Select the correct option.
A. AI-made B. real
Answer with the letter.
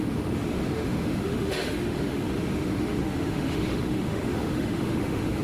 A